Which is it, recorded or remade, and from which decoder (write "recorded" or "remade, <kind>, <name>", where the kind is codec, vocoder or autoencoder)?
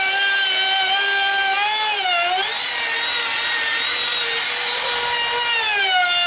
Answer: recorded